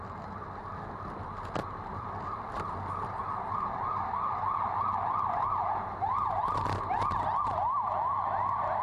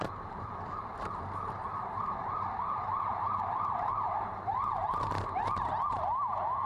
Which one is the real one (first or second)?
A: first